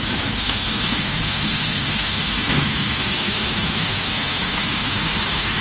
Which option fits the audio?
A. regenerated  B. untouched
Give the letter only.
A